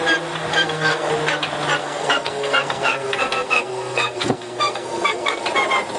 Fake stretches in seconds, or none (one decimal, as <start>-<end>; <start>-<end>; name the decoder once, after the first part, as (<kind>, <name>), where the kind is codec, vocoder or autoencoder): 0.5-1.1 (codec, SNAC); 1.8-5.4